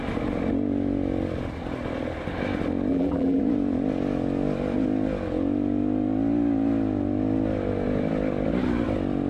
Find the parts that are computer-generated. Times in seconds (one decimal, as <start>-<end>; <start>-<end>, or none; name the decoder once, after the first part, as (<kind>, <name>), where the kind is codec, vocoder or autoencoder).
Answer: 2.9-3.4 (vocoder, BigVGAN v2)

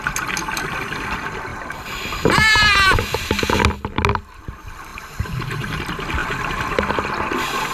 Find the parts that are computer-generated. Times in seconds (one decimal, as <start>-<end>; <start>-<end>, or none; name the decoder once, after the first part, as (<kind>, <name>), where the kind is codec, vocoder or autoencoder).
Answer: 4.9-5.8 (vocoder, BigVGAN v2)

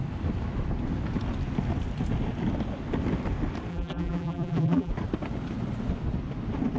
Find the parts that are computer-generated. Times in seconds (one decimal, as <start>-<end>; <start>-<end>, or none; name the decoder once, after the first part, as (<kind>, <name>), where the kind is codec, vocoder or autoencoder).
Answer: 3.7-4.9 (vocoder, BigVGAN v2)

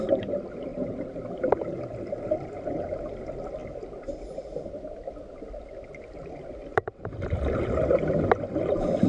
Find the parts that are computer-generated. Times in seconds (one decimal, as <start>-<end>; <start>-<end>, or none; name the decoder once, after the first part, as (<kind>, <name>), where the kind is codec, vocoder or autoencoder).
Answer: 0.7-1.2 (vocoder, BigVGAN v2); 6.6-7.8

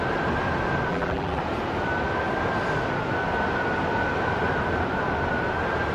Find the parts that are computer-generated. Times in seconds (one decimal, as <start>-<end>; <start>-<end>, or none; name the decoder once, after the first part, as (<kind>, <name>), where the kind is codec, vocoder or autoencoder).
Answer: 0.9-1.4 (vocoder, BigVGAN v2)

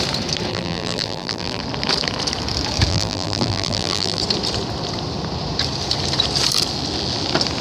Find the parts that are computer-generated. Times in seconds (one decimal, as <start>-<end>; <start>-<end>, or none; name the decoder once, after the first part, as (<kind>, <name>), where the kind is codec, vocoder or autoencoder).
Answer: 0.5-1.6 (vocoder, BigVGAN v2); 2.9-4.2